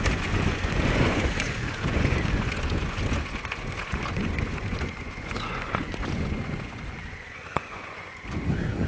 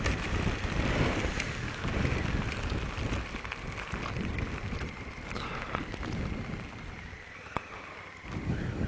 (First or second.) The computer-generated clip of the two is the first